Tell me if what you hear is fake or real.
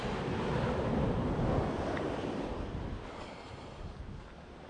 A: real